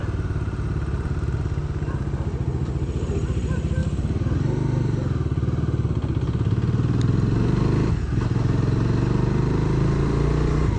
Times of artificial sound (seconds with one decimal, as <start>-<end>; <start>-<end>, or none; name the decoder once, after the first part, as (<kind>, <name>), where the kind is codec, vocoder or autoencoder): none